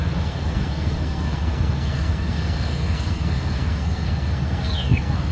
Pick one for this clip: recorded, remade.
remade